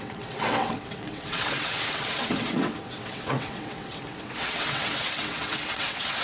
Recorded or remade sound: remade